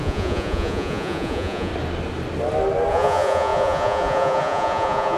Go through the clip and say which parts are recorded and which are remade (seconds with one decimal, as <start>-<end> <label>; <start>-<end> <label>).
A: 0.0-1.7 remade; 1.7-2.9 recorded; 2.9-5.2 remade

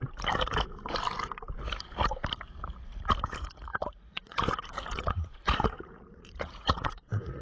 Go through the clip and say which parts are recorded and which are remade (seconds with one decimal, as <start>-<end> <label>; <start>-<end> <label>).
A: 0.0-3.7 recorded; 3.7-7.4 remade

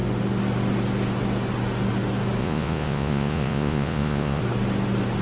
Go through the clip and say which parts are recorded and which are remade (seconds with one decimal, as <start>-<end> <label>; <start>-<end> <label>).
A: 0.0-2.4 recorded; 2.4-4.4 remade; 4.4-5.2 recorded

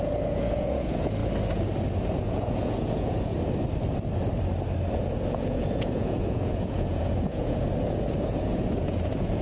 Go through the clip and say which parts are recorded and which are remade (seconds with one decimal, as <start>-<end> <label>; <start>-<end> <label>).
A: 0.0-1.2 remade; 1.2-2.0 recorded; 2.0-3.3 remade; 3.3-4.9 recorded; 4.9-9.4 remade

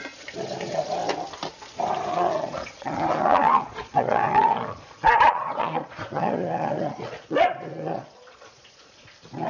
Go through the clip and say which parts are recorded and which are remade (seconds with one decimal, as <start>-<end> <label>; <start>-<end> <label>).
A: 0.0-1.0 remade; 1.0-2.1 recorded; 2.1-9.5 remade